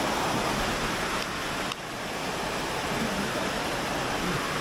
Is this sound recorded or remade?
recorded